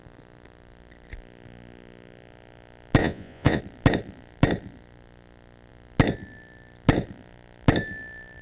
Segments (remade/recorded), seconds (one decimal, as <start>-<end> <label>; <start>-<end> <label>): 0.0-3.0 recorded; 3.0-3.6 remade; 3.6-8.4 recorded